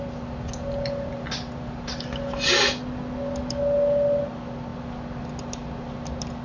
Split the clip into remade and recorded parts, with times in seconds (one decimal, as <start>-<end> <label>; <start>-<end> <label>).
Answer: 0.0-6.4 recorded